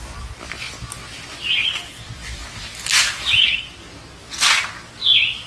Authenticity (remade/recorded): recorded